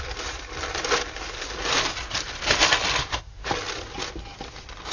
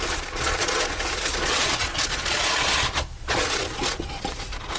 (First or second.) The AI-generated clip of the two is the second